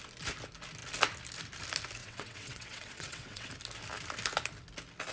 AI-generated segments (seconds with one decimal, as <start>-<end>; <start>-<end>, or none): 2.0-3.5